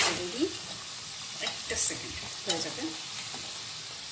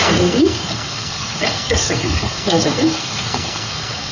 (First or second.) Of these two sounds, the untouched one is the first